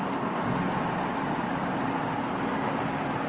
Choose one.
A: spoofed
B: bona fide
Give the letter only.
B